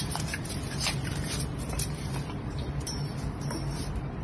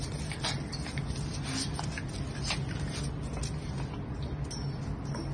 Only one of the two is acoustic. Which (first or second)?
second